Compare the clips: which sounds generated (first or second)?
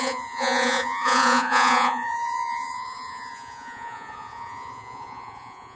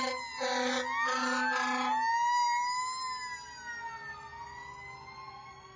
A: first